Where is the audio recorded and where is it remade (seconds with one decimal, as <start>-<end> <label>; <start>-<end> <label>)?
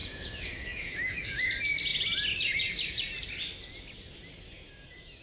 0.0-1.5 remade; 1.5-4.5 recorded; 4.5-5.2 remade